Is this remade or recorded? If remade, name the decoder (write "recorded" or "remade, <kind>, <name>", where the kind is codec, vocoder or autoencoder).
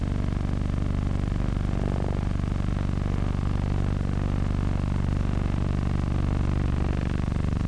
recorded